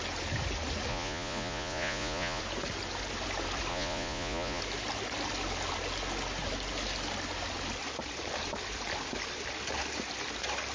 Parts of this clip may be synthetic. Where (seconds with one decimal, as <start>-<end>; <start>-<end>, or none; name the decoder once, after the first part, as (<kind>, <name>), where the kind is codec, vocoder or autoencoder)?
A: 0.9-2.4 (vocoder, Vocos); 3.7-4.6